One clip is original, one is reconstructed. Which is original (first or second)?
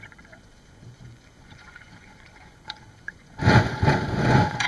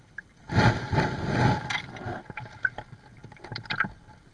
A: second